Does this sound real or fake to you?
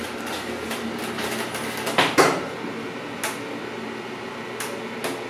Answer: real